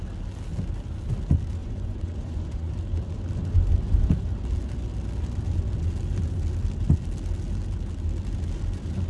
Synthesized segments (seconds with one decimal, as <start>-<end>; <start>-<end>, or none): 1.6-2.7